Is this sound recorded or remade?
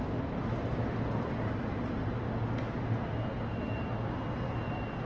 recorded